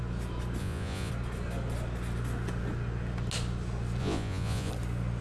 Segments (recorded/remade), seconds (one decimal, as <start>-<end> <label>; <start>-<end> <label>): 0.0-0.6 recorded; 0.6-1.1 remade; 1.1-4.0 recorded; 4.0-4.7 remade; 4.7-5.2 recorded